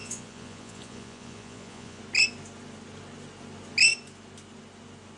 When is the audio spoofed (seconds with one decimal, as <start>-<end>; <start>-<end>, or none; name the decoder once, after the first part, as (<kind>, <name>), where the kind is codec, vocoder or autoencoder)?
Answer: 0.0-2.0 (vocoder, Vocos)